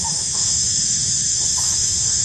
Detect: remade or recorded remade